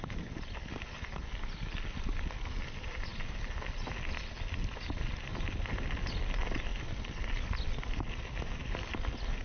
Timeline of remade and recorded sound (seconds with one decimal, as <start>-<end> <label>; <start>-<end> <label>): 0.0-9.4 recorded